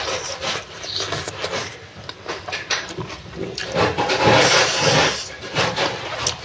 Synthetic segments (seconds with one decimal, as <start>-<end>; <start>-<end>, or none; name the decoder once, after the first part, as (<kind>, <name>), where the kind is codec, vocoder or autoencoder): none